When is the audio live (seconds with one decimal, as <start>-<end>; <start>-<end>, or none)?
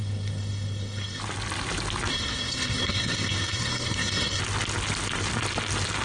1.2-2.1; 4.4-6.0